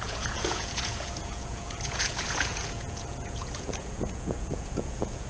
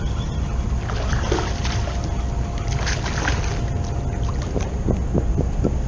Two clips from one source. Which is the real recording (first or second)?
second